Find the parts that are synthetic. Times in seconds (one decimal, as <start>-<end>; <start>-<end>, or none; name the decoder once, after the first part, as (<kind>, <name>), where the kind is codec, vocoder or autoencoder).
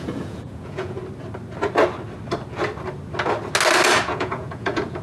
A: 0.0-1.0 (vocoder, Vocos); 4.0-5.0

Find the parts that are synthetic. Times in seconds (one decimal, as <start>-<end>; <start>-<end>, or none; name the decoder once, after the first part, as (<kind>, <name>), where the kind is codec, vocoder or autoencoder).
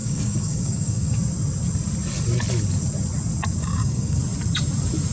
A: 0.0-1.1 (codec, DAC); 3.6-4.2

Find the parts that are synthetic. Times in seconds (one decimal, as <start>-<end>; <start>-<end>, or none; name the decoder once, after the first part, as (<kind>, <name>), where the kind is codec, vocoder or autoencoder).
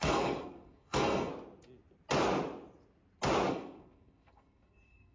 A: 0.0-1.3 (codec, SNAC); 3.5-5.1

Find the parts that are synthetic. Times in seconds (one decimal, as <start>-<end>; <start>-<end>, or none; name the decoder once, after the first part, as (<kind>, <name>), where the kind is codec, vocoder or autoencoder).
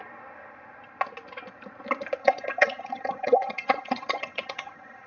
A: 2.2-5.1 (vocoder, HiFi-GAN)